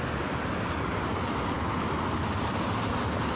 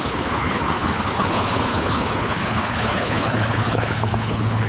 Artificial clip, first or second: second